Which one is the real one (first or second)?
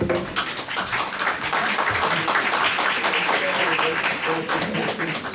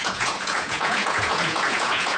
first